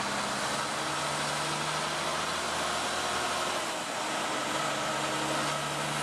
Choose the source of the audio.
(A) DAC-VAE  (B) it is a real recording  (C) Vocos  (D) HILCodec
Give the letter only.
B